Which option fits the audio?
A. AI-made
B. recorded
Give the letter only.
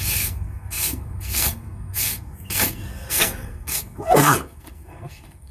A